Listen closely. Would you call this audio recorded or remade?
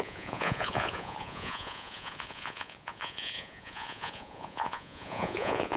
remade